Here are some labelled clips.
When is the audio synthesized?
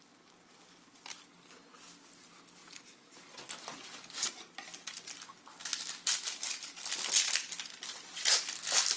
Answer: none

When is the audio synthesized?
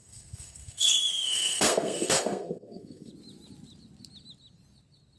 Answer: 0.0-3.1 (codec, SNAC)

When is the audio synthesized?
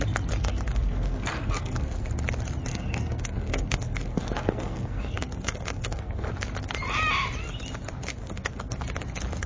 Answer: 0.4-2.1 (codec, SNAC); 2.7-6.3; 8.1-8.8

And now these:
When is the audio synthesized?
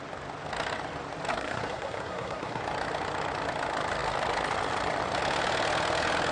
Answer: 1.3-2.6 (codec, SNAC)